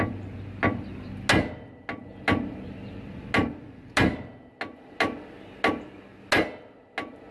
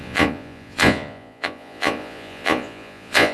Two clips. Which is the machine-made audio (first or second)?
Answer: second